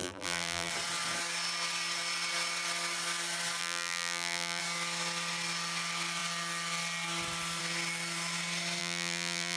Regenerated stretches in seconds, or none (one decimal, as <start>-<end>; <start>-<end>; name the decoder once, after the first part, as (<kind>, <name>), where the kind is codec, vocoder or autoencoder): 0.0-0.7 (vocoder, BigVGAN v2); 3.6-4.6; 8.8-9.6